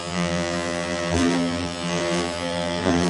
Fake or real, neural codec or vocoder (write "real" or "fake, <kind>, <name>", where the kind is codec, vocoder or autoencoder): fake, vocoder, BigVGAN v2